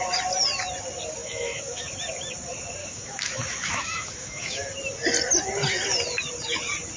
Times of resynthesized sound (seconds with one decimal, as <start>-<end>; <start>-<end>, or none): 1.2-1.9; 2.8-4.7